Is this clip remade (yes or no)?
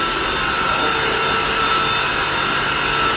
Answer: no